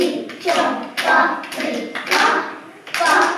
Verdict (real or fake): real